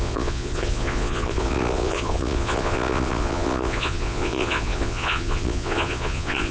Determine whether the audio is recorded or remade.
remade